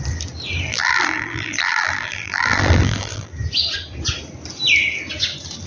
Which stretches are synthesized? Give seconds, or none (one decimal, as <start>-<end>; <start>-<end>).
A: 0.7-3.3